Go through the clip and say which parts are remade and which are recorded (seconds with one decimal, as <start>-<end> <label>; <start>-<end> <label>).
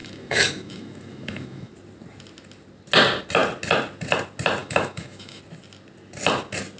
0.0-1.7 remade; 1.7-4.6 recorded; 4.6-5.4 remade; 5.4-6.8 recorded